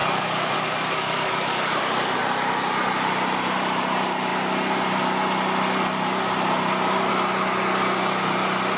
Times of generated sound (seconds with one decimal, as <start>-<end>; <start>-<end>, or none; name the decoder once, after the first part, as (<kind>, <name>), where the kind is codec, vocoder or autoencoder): 0.0-2.2 (codec, DAC)